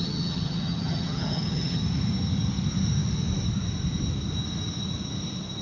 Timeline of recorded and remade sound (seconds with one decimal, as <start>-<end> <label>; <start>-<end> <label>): 0.0-1.8 remade; 1.8-5.6 recorded